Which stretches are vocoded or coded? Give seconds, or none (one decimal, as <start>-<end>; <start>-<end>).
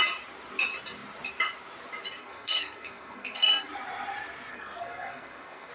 2.2-3.6; 4.5-5.7